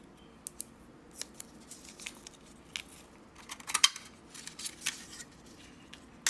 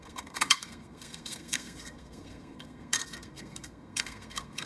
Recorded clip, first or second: first